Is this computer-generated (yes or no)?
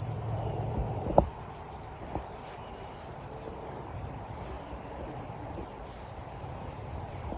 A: yes